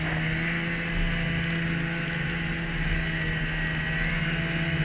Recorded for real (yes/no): yes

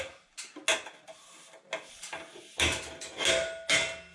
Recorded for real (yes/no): yes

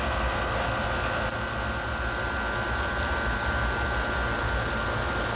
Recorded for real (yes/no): yes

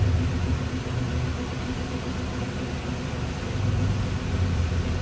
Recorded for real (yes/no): yes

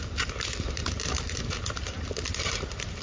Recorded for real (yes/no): yes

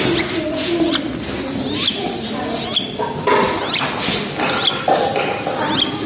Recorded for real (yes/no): yes